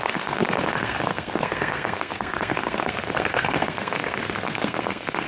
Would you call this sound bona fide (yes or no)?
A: no